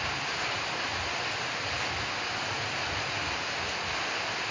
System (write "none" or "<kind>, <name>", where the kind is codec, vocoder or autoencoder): none